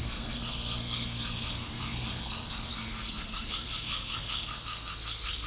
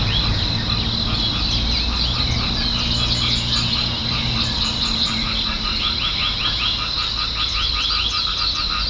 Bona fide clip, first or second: second